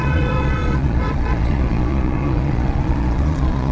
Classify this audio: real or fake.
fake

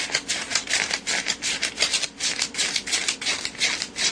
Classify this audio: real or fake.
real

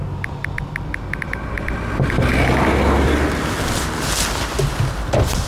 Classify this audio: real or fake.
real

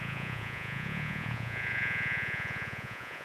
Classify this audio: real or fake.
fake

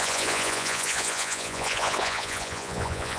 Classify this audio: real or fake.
fake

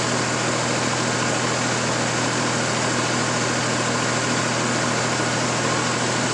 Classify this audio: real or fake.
real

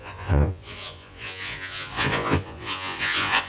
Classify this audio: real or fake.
fake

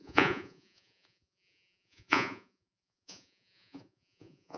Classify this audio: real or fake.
fake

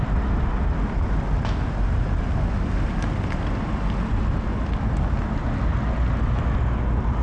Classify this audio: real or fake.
real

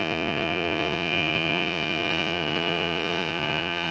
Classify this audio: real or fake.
fake